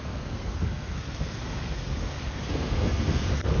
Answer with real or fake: fake